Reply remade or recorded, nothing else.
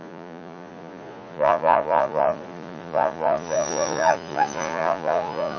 remade